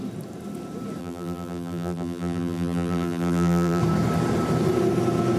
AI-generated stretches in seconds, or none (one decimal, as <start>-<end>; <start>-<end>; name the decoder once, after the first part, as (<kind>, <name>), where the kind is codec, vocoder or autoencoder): 1.0-3.8 (vocoder, BigVGAN v2)